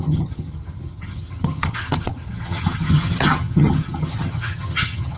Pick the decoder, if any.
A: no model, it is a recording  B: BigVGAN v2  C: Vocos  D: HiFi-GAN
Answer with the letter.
D